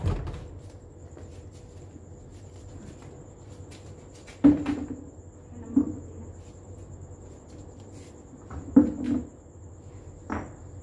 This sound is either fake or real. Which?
real